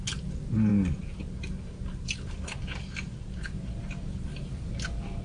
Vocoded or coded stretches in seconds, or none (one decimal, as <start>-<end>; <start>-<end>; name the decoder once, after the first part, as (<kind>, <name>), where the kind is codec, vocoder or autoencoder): none